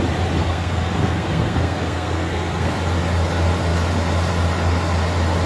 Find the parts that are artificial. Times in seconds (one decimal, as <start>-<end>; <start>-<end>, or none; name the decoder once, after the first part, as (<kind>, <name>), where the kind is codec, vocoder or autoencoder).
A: 0.4-2.8 (codec, SNAC)

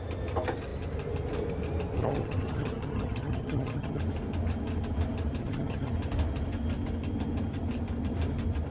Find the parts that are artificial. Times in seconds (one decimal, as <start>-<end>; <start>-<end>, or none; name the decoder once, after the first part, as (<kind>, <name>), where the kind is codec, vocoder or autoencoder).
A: 2.0-4.0 (vocoder, HiFi-GAN); 5.4-5.9

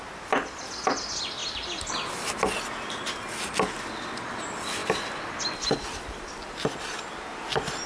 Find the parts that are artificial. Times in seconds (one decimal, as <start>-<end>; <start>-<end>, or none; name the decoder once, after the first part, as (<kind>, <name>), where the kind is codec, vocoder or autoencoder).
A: none

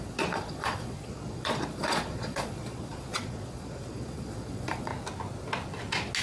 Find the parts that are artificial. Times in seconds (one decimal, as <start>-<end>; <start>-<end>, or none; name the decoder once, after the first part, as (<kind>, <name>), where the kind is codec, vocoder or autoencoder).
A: 0.0-4.9 (vocoder, Vocos)

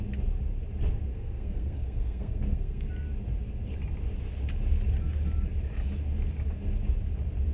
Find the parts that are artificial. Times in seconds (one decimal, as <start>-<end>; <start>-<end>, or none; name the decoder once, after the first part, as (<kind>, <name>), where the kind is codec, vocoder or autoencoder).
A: 1.1-2.9 (codec, SNAC)